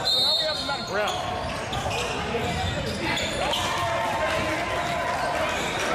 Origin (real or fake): real